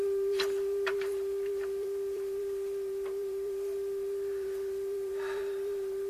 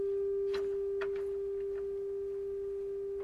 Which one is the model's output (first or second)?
first